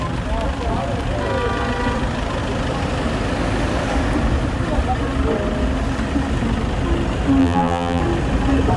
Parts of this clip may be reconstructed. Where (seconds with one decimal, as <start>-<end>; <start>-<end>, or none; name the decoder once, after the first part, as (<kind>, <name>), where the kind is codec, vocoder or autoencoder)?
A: 7.4-8.0 (vocoder, BigVGAN v2)